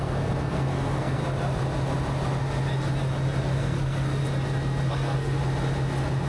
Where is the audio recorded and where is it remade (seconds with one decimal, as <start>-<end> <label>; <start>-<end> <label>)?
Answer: 0.0-1.2 remade; 1.2-3.4 recorded; 3.4-4.2 remade; 4.2-4.9 recorded; 4.9-5.4 remade; 5.4-6.3 recorded